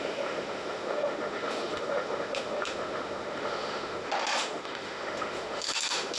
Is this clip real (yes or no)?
no